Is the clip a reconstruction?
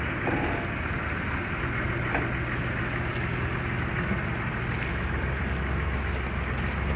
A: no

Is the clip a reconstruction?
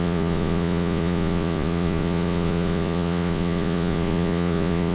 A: yes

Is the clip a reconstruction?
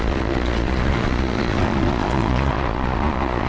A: yes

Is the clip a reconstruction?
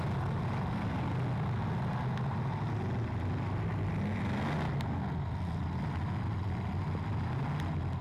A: no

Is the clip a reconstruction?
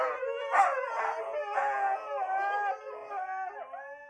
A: no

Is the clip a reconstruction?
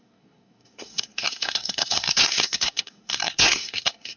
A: yes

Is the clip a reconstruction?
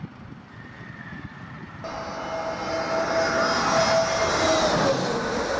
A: no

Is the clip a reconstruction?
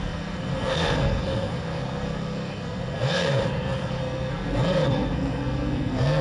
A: yes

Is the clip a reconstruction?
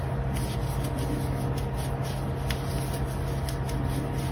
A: no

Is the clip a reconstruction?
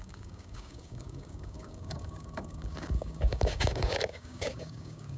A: yes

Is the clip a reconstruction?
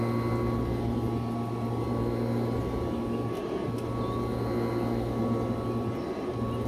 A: no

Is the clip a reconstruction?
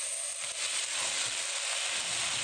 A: no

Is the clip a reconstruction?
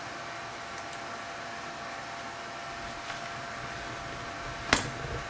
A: no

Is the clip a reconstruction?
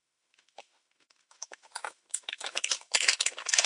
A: yes